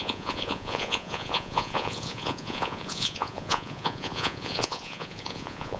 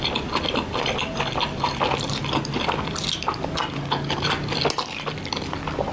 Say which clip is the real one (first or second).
second